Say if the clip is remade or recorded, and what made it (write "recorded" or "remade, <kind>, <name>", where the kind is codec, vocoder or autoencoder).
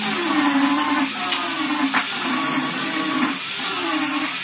recorded